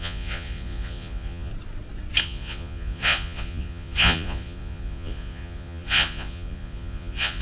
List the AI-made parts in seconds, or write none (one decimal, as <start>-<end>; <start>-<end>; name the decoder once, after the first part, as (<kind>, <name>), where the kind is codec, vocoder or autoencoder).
0.0-1.5 (vocoder, Vocos); 2.2-7.4